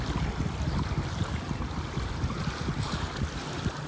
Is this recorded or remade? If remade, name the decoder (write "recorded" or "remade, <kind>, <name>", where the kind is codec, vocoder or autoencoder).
recorded